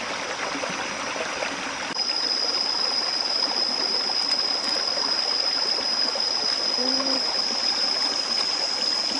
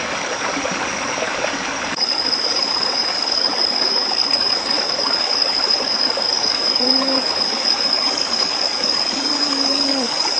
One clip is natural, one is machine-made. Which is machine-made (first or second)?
second